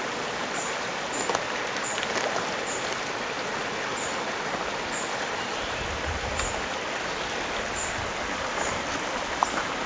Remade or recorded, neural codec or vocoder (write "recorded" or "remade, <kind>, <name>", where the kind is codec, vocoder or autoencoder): recorded